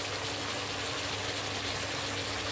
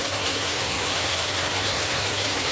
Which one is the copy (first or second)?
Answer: second